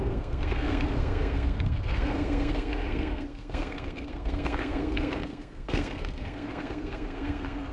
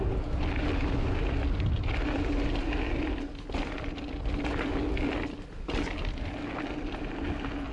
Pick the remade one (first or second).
first